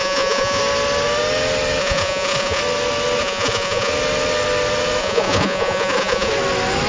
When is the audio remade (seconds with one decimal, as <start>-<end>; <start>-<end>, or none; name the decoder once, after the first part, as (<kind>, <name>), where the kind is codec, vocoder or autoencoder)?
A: 0.0-0.6 (vocoder, Vocos); 1.8-2.6; 3.2-3.9; 5.0-6.3